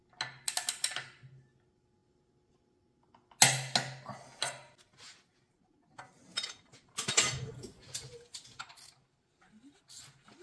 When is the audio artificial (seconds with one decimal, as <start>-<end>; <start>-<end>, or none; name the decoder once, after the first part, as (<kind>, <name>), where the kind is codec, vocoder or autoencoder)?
none